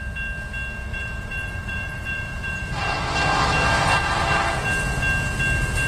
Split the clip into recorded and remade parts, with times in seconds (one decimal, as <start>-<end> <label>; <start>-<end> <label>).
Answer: 0.0-0.9 recorded; 0.9-2.9 remade; 2.9-5.9 recorded